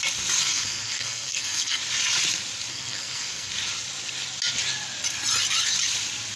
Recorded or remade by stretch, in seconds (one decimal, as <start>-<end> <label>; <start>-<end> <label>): 0.0-0.4 recorded; 0.4-1.8 remade; 1.8-2.7 recorded; 2.7-3.5 remade; 3.5-6.4 recorded